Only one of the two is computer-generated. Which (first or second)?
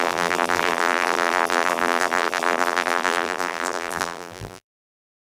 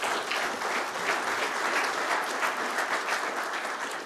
first